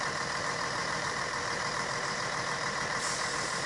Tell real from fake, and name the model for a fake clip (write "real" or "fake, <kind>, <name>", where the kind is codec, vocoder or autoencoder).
fake, vocoder, BigVGAN v2